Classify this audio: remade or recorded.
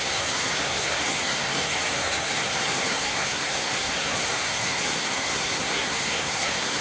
remade